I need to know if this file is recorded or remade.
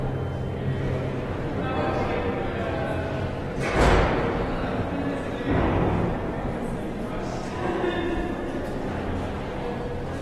recorded